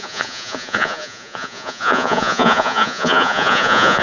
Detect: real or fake fake